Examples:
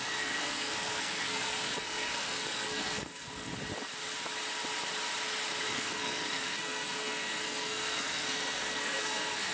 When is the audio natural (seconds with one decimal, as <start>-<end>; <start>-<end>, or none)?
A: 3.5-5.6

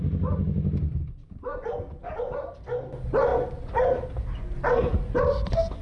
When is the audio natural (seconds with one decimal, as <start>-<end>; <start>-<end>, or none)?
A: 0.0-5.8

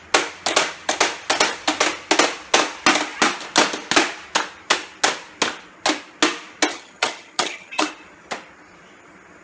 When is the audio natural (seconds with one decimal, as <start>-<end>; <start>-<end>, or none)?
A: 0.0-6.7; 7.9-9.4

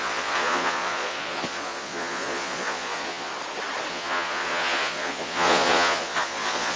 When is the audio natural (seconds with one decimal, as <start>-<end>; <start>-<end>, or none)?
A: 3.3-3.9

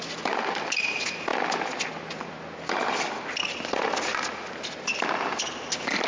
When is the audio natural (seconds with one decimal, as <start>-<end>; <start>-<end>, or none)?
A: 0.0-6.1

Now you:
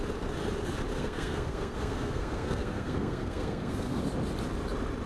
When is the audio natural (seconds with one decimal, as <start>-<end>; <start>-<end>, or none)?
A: 0.0-0.9; 4.0-5.1

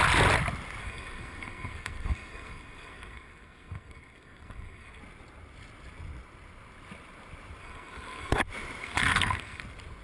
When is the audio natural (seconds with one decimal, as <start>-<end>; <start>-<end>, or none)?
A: 0.0-0.8; 5.0-7.6; 8.4-8.8; 9.6-10.0

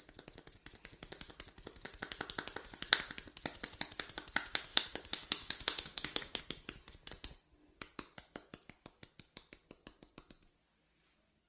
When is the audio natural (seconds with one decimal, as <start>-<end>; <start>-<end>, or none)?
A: 0.0-4.7; 6.4-11.5